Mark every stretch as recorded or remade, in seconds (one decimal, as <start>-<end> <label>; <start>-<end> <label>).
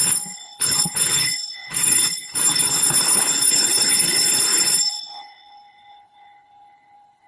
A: 0.0-7.3 remade